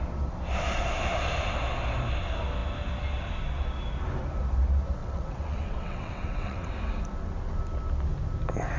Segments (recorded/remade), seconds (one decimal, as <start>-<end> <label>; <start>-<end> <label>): 0.0-5.0 recorded; 5.0-6.7 remade; 6.7-8.8 recorded

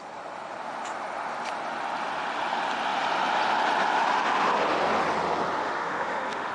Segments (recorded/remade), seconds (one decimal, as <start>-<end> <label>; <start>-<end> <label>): 0.0-5.6 recorded; 5.6-6.5 remade

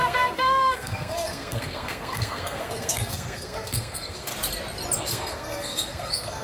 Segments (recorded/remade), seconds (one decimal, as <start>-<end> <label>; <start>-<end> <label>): 0.0-4.3 remade; 4.3-5.0 recorded; 5.0-6.4 remade

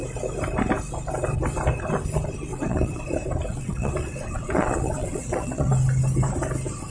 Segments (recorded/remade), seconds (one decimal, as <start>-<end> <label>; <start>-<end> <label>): 0.0-2.5 recorded; 2.5-3.0 remade; 3.0-3.5 recorded; 3.5-5.7 remade; 5.7-6.9 recorded

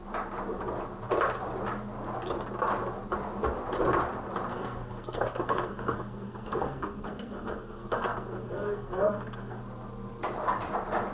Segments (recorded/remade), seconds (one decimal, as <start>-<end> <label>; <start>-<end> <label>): 0.0-4.5 recorded; 4.5-9.6 remade; 9.6-11.1 recorded

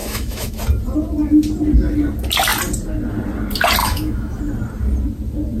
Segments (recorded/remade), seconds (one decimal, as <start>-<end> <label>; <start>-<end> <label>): 0.0-0.6 remade; 0.6-3.8 recorded; 3.8-4.4 remade; 4.4-5.6 recorded

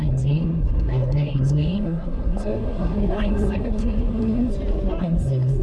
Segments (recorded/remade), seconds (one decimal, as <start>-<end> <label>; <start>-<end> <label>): 0.0-4.5 remade; 4.5-5.0 recorded; 5.0-5.6 remade